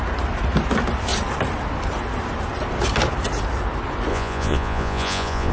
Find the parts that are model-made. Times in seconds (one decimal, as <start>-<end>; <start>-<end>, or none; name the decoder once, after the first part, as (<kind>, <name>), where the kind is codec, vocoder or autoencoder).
4.1-5.5 (vocoder, Vocos)

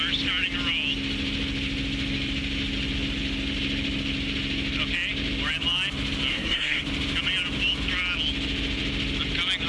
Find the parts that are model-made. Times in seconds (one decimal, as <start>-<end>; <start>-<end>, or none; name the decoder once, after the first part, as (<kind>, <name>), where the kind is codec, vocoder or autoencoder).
6.3-6.8 (codec, SNAC)

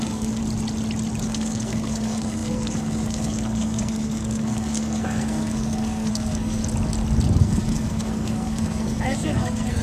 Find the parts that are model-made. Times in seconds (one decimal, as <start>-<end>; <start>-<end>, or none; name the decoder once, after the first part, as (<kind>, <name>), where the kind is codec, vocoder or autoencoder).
0.0-0.4 (codec, SNAC); 1.2-6.6; 7.4-9.8

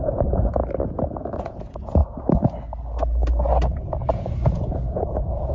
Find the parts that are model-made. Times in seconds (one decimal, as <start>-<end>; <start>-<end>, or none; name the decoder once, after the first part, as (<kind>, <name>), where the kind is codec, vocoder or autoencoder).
0.0-0.6 (vocoder, Vocos); 1.4-2.0; 4.1-5.5

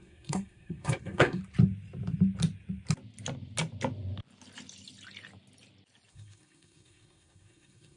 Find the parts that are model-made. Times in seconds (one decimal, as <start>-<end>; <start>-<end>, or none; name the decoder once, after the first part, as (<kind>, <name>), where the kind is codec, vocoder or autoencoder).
0.0-1.4 (codec, SNAC); 6.1-8.0

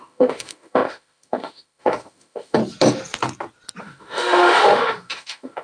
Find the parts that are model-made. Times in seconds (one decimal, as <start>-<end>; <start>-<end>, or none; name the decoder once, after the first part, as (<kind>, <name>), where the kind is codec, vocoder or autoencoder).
0.0-2.6 (autoencoder, DAC-VAE); 3.8-5.6